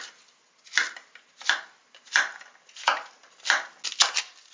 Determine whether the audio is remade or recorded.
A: recorded